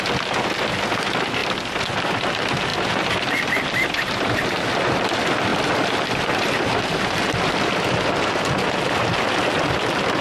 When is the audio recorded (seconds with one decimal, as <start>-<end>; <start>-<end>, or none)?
0.0-2.7; 4.3-5.5; 8.3-10.2